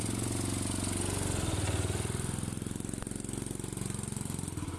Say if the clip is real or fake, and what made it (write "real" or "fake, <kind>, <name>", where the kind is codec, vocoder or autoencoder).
real